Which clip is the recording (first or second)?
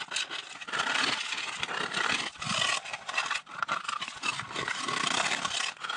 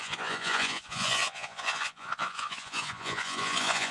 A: first